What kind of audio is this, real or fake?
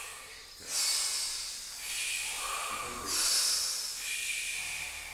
real